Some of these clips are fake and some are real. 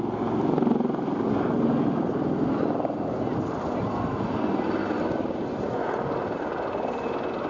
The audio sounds real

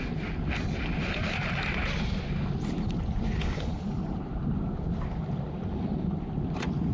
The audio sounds real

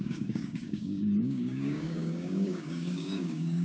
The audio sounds fake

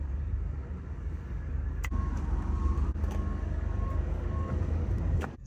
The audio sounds fake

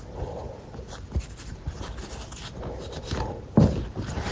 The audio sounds real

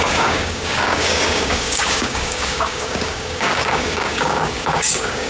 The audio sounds fake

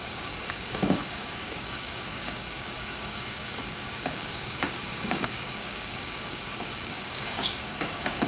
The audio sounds fake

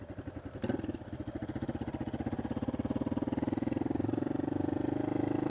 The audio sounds real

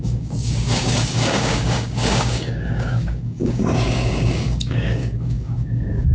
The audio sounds fake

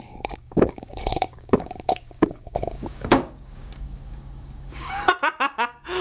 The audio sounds fake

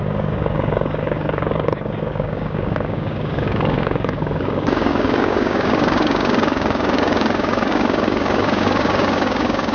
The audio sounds fake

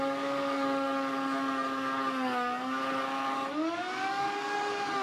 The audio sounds fake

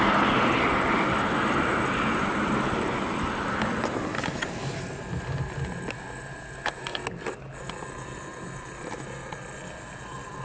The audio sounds real